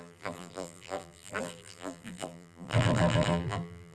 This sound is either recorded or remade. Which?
remade